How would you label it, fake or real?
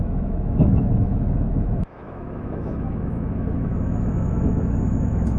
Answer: fake